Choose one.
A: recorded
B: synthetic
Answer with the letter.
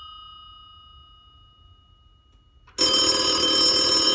A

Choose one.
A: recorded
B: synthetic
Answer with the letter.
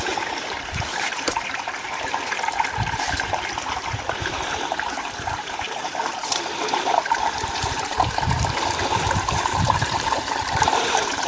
B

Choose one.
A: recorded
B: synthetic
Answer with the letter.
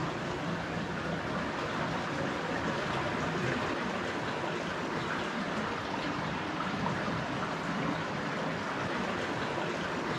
A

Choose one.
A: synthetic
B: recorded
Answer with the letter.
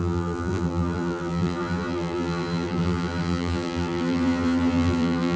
A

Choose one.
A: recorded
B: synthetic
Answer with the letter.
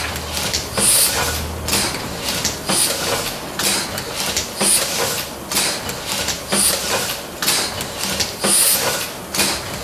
A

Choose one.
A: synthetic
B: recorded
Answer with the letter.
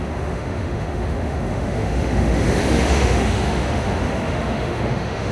A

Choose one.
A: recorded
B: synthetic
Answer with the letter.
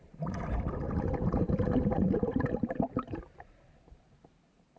B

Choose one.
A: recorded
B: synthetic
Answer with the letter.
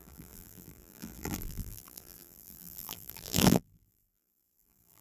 B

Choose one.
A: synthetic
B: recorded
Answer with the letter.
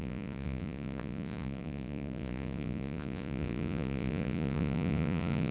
A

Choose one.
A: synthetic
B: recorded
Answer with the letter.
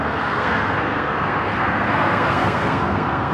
A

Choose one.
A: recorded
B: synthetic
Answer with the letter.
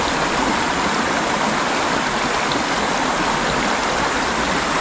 A